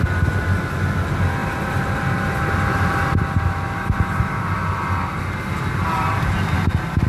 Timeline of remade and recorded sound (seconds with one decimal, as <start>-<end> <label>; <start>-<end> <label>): 0.0-1.4 recorded; 1.4-4.8 remade; 4.8-7.1 recorded